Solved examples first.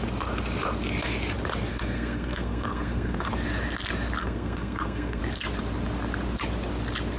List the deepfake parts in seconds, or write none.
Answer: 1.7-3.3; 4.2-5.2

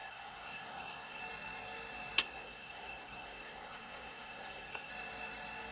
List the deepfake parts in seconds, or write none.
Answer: 0.0-1.2; 2.2-4.9

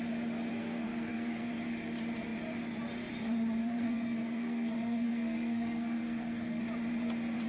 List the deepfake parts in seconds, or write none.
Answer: 0.5-1.5; 3.6-6.6

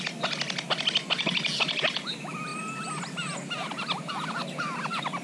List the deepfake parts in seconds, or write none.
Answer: none

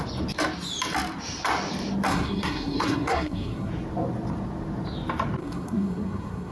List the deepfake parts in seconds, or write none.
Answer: 2.1-3.7; 5.4-6.5

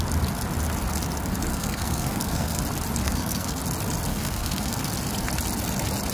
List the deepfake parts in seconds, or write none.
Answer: 1.5-2.6; 3.0-3.6; 4.1-4.8

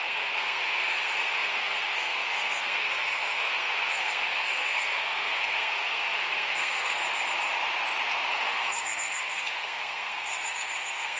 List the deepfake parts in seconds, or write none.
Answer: 0.0-7.0; 8.3-11.2